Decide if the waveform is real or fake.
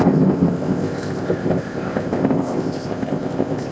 fake